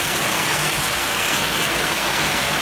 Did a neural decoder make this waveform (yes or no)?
yes